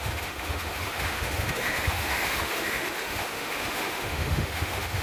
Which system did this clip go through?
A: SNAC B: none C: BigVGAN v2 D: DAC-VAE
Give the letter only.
D